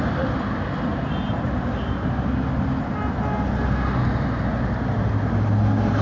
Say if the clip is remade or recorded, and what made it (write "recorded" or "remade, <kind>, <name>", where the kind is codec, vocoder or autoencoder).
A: recorded